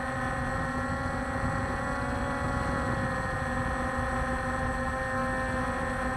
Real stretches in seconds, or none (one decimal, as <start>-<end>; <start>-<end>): 0.0-6.2